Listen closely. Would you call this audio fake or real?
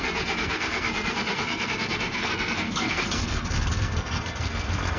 fake